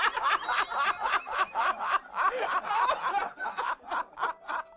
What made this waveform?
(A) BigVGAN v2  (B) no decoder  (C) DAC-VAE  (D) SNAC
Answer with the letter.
A